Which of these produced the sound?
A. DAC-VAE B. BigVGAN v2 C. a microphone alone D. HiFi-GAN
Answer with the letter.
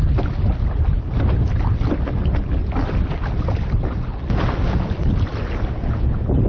C